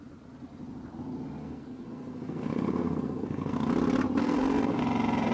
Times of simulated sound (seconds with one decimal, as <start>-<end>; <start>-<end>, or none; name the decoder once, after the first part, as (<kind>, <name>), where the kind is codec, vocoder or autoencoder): 1.4-3.7 (codec, SNAC); 4.2-4.8